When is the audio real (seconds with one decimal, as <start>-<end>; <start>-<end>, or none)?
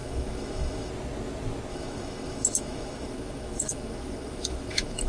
0.9-1.7